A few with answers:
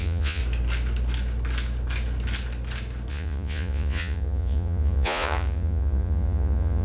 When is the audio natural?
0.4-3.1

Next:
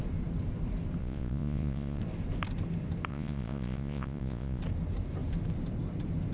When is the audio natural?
0.0-1.0; 2.0-3.1; 4.6-6.3

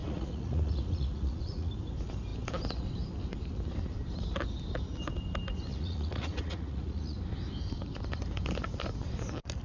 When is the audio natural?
1.7-5.7; 7.2-9.6

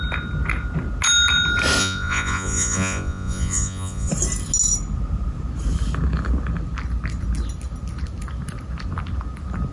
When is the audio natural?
0.0-1.8; 4.1-9.7

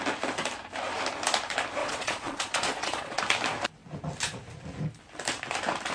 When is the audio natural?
0.0-1.8; 3.2-5.9

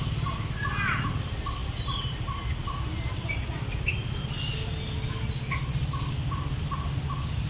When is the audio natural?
0.0-7.5

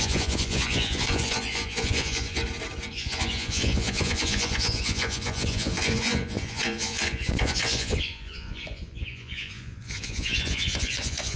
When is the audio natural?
2.4-2.9

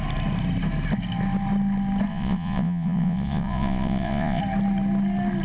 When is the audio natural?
0.0-2.1; 4.4-5.4